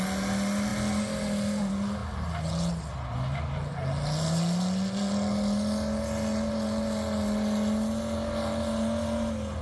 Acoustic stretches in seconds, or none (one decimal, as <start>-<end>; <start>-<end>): 0.0-9.6